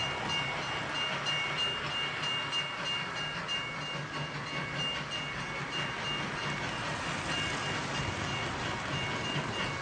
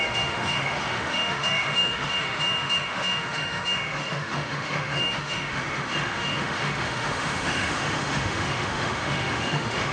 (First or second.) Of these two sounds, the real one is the first